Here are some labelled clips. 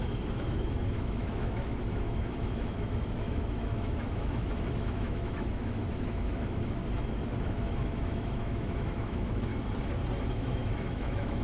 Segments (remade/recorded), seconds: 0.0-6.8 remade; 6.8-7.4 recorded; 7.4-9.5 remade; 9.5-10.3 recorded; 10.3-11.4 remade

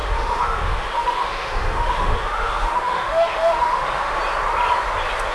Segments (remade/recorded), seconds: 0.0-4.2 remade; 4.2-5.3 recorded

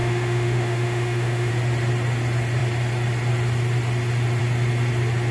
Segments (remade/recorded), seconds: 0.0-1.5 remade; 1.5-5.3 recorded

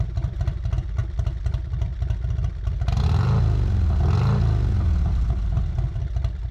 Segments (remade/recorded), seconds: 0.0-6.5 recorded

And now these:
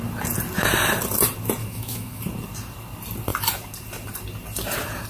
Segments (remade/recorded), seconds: 0.0-1.6 recorded; 1.6-2.2 remade; 2.2-5.1 recorded

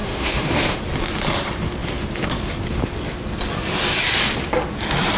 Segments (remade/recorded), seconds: 0.0-0.8 remade; 0.8-5.2 recorded

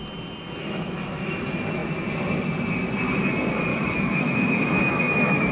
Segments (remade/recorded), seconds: 0.0-0.6 recorded; 0.6-1.4 remade; 1.4-3.7 recorded; 3.7-5.5 remade